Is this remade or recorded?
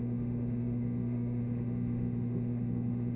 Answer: remade